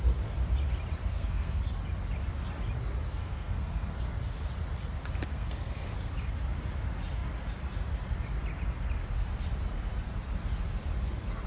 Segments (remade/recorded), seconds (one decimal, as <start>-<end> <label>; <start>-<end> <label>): 0.0-1.1 recorded; 1.1-1.6 remade; 1.6-3.2 recorded; 3.2-4.0 remade; 4.0-5.3 recorded; 5.3-6.1 remade; 6.1-11.5 recorded

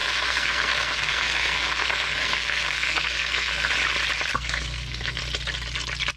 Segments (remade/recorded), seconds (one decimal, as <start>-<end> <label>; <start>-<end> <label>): 0.0-3.7 remade; 3.7-4.3 recorded; 4.3-5.2 remade; 5.2-6.2 recorded

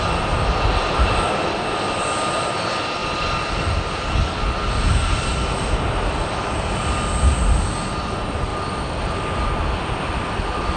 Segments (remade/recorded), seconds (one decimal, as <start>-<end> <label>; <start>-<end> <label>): 0.0-10.8 recorded

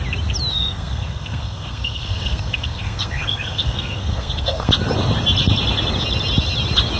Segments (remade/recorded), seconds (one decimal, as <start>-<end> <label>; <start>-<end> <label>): 0.0-0.5 recorded; 0.5-4.7 remade; 4.7-7.0 recorded

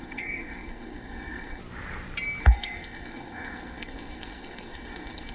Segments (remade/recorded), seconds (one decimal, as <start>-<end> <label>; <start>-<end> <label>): 0.0-1.6 remade; 1.6-2.4 recorded; 2.4-5.3 remade

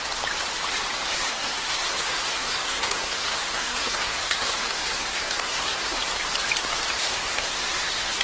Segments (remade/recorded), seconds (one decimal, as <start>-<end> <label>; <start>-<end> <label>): 0.0-1.1 recorded; 1.1-6.0 remade; 6.0-7.0 recorded; 7.0-8.2 remade

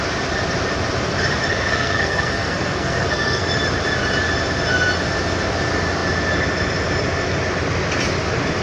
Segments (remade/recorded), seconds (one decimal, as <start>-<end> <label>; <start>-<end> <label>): 0.0-1.5 recorded; 1.5-3.5 remade; 3.5-8.6 recorded

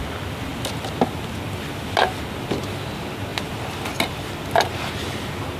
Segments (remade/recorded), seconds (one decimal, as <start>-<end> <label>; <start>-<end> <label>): 0.0-5.6 recorded